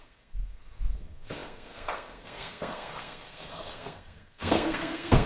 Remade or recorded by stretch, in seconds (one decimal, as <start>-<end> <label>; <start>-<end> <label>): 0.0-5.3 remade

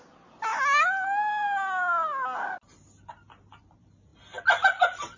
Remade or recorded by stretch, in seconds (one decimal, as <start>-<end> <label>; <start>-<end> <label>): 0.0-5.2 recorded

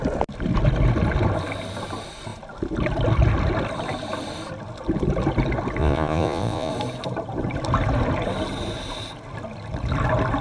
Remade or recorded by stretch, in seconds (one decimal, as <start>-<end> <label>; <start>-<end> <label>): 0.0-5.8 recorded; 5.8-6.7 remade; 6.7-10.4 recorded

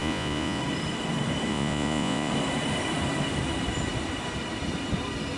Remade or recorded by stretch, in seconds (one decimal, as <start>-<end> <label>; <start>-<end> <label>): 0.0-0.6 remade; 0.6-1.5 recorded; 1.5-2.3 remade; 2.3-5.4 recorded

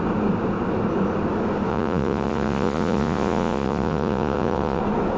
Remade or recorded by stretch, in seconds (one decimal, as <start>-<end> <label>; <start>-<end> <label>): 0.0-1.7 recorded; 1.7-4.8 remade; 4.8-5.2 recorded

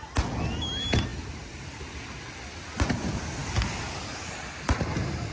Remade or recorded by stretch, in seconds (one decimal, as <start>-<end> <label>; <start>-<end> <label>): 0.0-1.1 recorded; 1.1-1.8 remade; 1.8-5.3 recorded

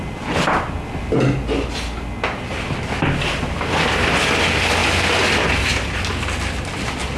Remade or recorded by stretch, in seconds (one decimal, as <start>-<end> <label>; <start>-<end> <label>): 0.0-7.2 recorded